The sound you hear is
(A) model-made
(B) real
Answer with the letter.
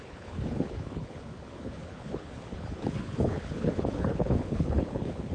A